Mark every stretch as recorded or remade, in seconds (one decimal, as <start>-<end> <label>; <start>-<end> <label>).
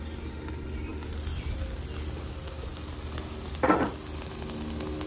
0.0-5.1 recorded